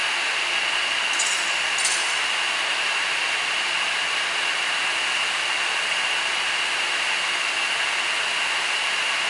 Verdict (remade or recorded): recorded